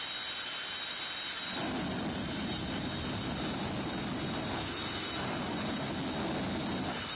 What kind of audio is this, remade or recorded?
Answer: recorded